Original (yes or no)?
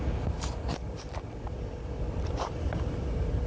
yes